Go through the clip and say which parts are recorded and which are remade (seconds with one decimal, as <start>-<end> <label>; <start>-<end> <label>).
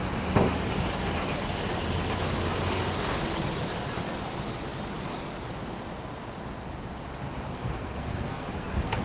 0.0-7.5 recorded; 7.5-9.0 remade